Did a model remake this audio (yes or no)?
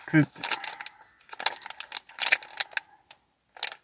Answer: no